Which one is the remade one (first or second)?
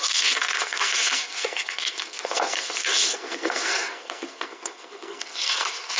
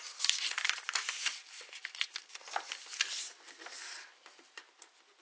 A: first